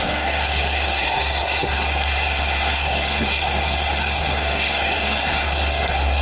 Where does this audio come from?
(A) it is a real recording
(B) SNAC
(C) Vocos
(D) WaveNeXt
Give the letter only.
B